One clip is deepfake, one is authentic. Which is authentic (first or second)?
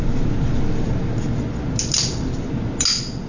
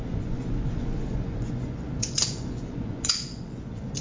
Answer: first